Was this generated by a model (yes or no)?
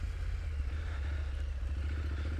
no